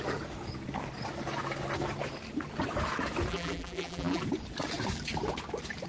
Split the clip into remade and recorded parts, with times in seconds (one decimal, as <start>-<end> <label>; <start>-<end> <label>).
0.0-3.3 recorded; 3.3-4.2 remade; 4.2-5.9 recorded